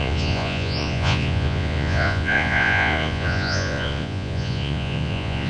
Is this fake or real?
fake